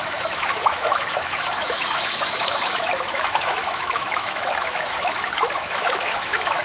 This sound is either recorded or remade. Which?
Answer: remade